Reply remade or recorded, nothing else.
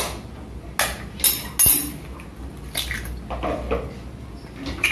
recorded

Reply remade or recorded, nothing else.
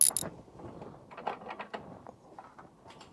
recorded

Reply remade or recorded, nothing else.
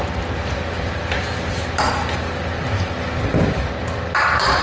recorded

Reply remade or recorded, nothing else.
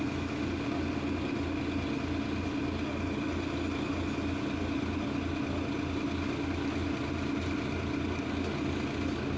recorded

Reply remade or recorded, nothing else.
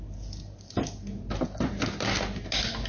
recorded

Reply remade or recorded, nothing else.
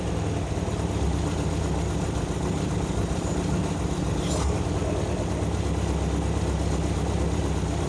recorded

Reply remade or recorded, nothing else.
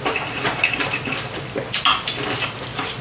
recorded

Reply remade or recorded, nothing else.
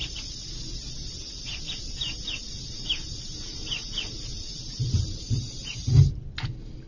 recorded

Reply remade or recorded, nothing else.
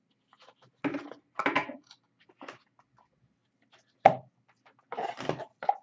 recorded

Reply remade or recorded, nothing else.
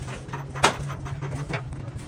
recorded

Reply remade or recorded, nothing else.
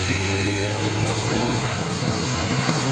remade